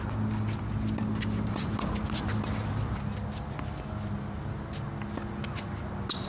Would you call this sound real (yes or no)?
yes